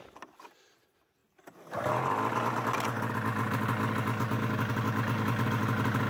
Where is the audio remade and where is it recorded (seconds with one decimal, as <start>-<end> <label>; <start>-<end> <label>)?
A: 0.0-6.1 recorded